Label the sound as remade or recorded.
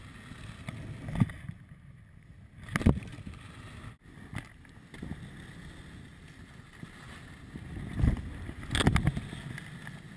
recorded